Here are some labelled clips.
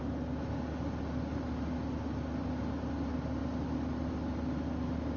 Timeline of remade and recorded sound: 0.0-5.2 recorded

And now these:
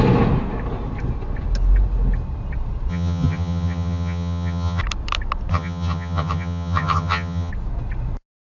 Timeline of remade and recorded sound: 0.0-2.9 recorded; 2.9-4.8 remade; 4.8-5.5 recorded; 5.5-7.5 remade; 7.5-8.5 recorded

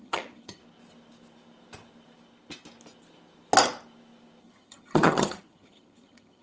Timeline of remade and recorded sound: 0.0-0.6 remade; 0.6-4.4 recorded; 4.4-6.4 remade

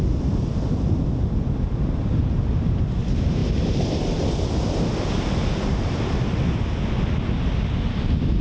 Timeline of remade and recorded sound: 0.0-8.4 recorded